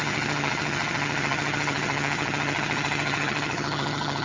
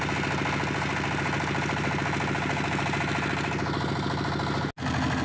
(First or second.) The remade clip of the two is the first